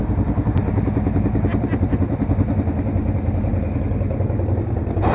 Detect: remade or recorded recorded